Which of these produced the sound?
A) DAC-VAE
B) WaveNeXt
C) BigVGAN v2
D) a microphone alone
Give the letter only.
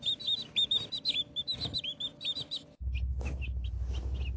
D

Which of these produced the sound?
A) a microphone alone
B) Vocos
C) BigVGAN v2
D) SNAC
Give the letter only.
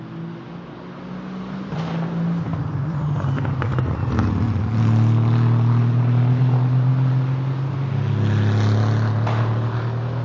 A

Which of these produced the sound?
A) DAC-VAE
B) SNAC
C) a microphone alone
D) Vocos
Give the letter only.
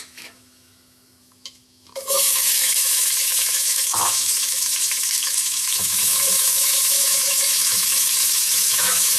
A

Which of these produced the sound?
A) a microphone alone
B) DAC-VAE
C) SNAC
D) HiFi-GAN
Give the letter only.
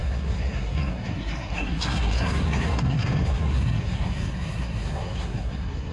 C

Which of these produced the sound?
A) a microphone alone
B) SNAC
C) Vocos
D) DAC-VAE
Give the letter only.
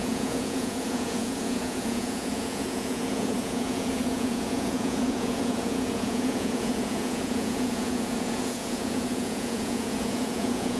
C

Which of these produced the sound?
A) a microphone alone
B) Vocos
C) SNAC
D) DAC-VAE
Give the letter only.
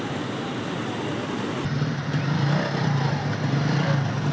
A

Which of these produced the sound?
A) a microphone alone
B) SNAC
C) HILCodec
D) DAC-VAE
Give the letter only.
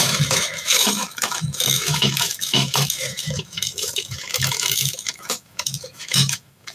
D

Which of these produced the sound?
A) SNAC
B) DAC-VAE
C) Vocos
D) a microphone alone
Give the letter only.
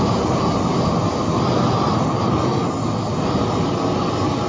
D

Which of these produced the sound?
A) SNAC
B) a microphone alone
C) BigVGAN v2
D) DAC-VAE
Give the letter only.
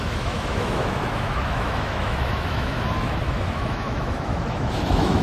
D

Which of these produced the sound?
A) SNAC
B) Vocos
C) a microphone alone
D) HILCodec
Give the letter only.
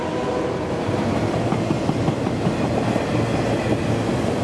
C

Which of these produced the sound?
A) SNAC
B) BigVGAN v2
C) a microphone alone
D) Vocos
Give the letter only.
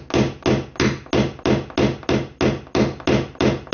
C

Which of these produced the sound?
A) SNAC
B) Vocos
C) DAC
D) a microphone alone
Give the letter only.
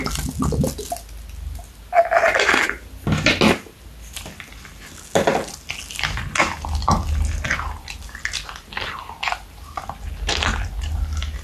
D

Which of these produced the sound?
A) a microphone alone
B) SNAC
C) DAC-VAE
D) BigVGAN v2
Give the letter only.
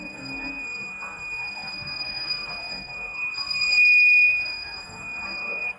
B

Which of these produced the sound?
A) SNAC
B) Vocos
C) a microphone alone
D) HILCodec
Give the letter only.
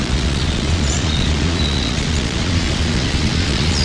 B